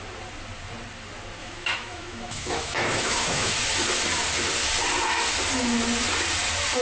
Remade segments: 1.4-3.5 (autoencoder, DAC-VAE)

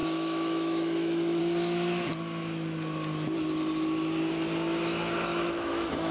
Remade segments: 0.0-1.4 (autoencoder, DAC-VAE); 5.3-6.1

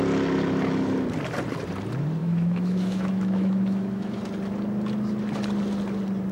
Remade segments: 2.2-4.2 (autoencoder, DAC-VAE)

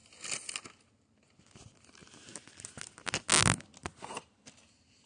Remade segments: none

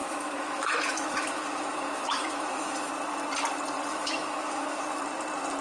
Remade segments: 0.0-2.9 (autoencoder, DAC-VAE); 3.9-4.8